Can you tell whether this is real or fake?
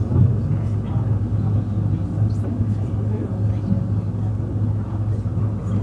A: real